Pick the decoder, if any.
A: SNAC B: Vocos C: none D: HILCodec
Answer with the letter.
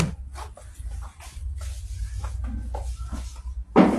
C